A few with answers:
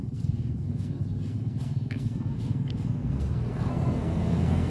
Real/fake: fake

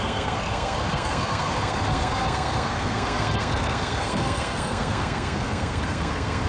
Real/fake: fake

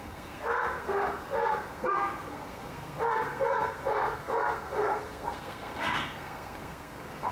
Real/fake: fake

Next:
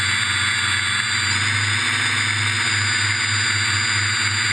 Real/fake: real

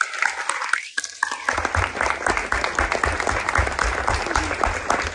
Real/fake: real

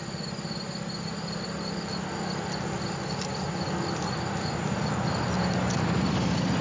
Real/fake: real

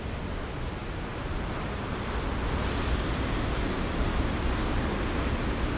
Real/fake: real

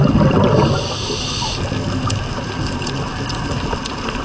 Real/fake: real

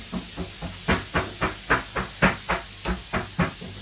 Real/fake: real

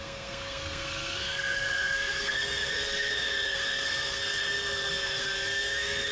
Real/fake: fake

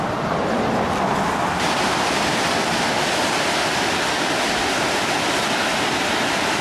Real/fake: real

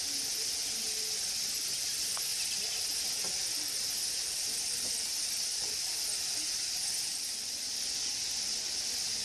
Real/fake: real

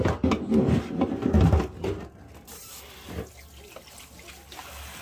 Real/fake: real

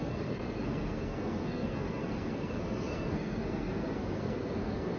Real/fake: fake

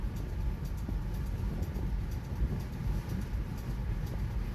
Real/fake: real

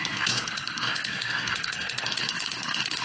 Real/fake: fake